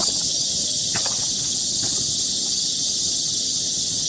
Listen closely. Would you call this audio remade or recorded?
remade